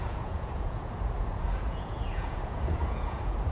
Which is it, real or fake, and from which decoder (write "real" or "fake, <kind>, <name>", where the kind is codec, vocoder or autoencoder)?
fake, vocoder, Vocos